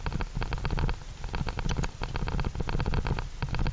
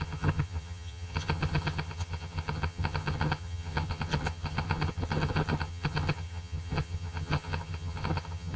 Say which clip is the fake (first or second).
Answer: second